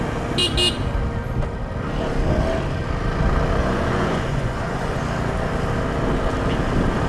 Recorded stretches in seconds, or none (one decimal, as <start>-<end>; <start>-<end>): 0.0-3.6; 5.0-7.1